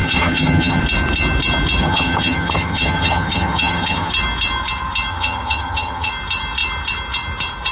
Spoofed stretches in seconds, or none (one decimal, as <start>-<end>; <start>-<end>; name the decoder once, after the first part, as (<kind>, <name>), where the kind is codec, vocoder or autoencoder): 0.0-0.8 (vocoder, HiFi-GAN); 1.8-4.1; 5.1-6.1